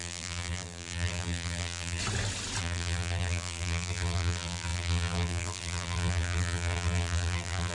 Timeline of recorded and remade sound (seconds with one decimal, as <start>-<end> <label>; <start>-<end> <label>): 0.0-2.0 remade; 2.0-2.6 recorded; 2.6-7.7 remade